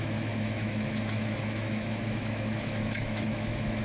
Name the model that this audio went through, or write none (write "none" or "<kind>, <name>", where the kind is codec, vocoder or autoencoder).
autoencoder, DAC-VAE